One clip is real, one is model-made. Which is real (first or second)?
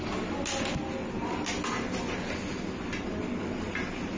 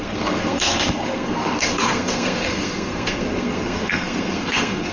first